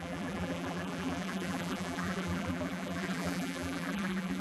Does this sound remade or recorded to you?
remade